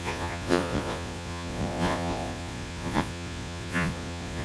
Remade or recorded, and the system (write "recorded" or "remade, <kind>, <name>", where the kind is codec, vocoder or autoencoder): remade, vocoder, Vocos